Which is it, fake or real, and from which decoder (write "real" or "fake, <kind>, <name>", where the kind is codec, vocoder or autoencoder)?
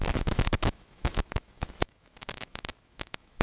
fake, autoencoder, DAC-VAE